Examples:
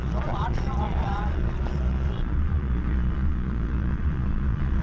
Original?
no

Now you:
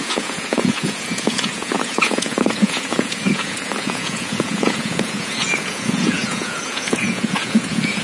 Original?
no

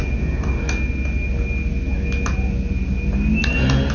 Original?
yes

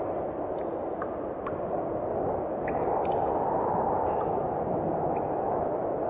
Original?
yes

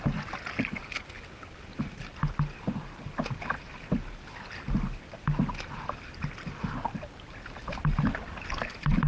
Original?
yes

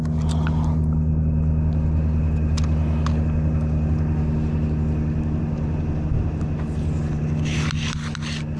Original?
yes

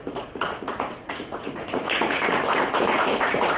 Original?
no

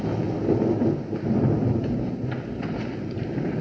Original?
yes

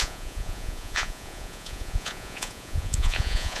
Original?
no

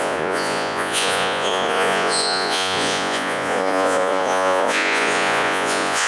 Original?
no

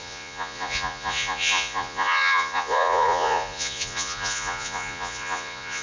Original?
no